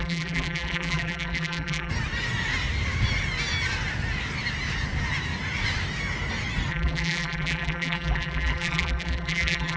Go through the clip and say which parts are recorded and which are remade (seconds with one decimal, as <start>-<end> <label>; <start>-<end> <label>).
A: 0.0-1.9 remade; 1.9-6.7 recorded; 6.7-9.8 remade